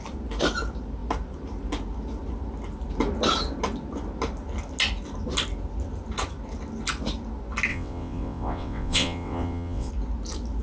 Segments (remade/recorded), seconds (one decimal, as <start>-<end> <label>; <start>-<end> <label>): 0.0-7.7 recorded; 7.7-9.9 remade; 9.9-10.6 recorded